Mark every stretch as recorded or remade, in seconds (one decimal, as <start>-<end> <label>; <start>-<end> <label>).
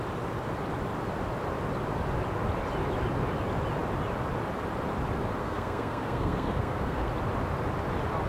0.0-5.4 recorded; 5.4-7.1 remade; 7.1-8.3 recorded